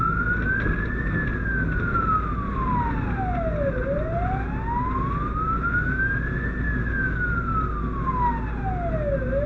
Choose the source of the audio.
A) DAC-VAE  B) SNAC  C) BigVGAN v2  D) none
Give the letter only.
D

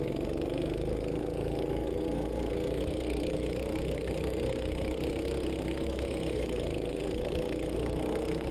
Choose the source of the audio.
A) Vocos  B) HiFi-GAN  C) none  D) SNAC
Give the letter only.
D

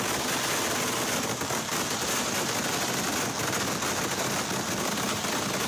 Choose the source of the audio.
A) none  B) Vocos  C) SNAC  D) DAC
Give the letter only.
A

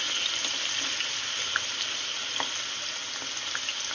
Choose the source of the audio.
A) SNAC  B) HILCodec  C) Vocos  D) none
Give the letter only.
D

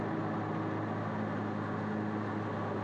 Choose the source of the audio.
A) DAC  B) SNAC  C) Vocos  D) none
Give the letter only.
D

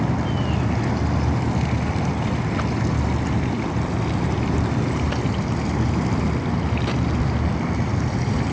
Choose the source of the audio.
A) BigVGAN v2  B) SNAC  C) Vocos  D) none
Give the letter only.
D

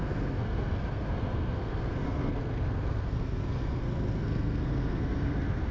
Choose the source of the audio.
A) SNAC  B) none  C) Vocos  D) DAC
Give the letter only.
A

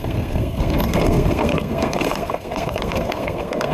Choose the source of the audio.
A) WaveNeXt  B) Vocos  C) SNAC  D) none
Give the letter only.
C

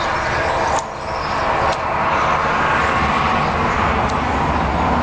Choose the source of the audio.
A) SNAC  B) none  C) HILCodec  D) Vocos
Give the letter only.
B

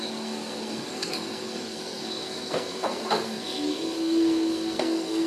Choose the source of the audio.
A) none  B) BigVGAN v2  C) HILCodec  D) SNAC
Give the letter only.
D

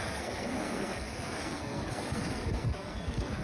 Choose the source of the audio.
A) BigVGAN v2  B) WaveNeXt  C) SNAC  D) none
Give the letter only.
C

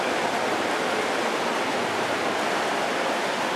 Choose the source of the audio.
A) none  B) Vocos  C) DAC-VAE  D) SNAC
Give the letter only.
A